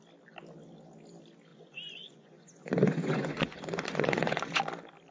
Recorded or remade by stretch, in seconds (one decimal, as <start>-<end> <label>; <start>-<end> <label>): 0.0-1.5 recorded; 1.5-4.6 remade; 4.6-5.1 recorded